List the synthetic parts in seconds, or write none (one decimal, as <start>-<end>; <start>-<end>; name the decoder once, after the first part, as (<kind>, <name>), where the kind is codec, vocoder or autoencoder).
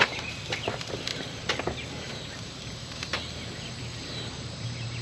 0.0-3.1 (vocoder, BigVGAN v2); 3.8-5.0